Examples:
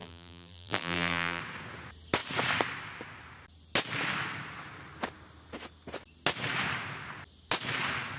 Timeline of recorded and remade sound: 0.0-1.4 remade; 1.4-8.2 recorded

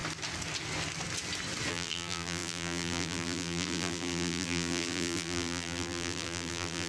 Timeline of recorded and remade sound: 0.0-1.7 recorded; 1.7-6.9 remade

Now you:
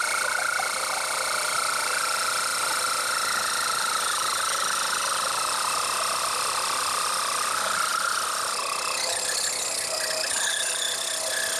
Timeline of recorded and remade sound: 0.0-2.5 remade; 2.5-3.5 recorded; 3.5-7.9 remade; 7.9-11.6 recorded